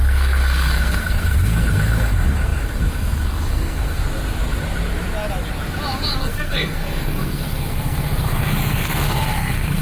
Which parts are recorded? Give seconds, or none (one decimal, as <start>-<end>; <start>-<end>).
4.0-6.2

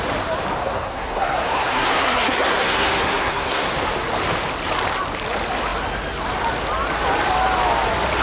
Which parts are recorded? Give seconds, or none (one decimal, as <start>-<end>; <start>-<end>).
0.0-0.6; 3.7-8.2

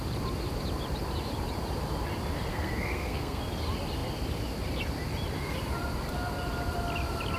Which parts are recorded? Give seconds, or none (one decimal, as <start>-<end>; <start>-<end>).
0.0-2.5; 3.4-7.4

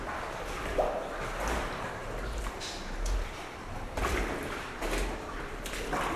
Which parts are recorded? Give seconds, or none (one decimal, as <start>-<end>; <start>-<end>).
0.0-6.2

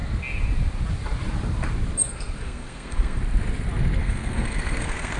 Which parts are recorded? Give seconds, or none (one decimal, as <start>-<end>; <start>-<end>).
0.0-2.0; 3.2-4.0

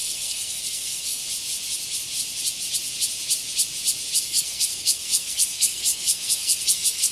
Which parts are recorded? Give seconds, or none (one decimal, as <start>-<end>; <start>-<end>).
1.2-4.2